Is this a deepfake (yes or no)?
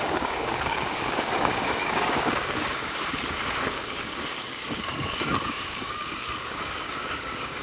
yes